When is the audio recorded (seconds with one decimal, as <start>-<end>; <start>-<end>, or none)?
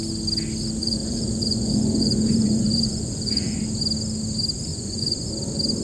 0.0-0.8; 3.6-4.7; 5.3-5.8